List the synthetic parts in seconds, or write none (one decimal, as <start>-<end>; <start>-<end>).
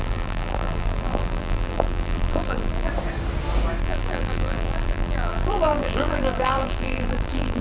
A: 0.0-2.9; 3.8-7.6